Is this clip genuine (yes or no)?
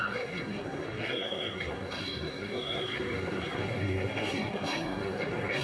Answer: no